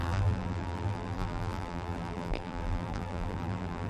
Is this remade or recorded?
remade